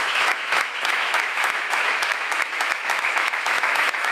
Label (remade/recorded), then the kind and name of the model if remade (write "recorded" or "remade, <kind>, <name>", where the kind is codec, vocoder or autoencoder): remade, autoencoder, DAC-VAE